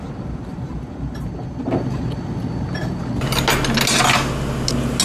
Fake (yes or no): no